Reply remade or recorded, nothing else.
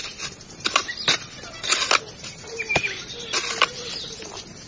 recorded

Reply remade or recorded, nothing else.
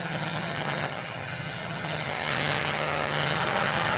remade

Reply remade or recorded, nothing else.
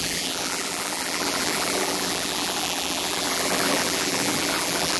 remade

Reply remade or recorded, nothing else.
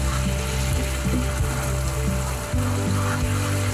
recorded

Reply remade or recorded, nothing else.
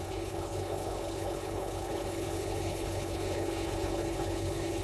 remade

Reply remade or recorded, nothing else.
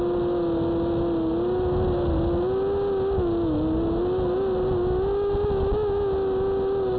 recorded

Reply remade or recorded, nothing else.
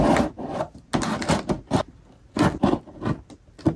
recorded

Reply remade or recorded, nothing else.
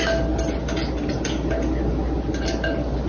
recorded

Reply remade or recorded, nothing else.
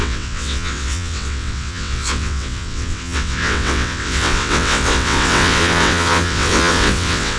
remade